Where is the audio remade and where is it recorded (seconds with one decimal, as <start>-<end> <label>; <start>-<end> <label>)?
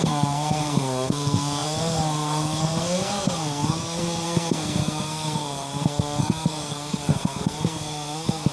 0.0-8.5 remade